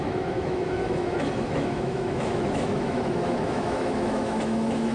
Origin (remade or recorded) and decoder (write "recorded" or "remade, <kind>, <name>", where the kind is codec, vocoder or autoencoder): remade, autoencoder, DAC-VAE